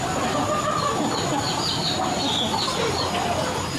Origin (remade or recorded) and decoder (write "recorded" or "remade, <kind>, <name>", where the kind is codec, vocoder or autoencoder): recorded